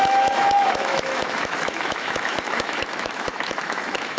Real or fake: fake